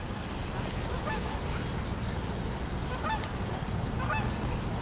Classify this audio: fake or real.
real